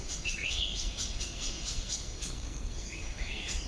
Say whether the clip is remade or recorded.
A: remade